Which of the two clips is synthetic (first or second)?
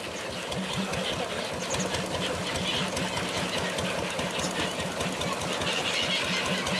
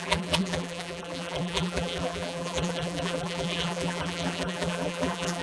second